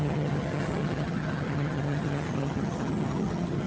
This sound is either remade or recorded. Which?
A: remade